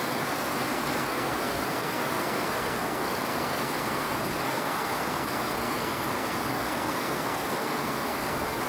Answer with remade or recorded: remade